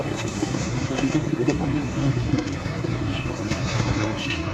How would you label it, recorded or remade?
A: remade